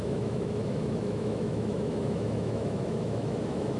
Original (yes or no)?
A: no